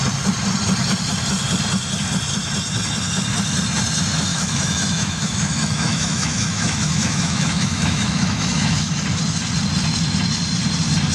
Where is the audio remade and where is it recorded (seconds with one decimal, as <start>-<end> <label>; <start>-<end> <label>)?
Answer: 0.0-4.3 recorded; 4.3-8.9 remade; 8.9-11.1 recorded